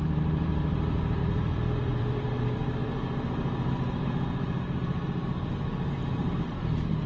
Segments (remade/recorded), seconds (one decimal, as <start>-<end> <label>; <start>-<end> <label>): 0.0-7.1 remade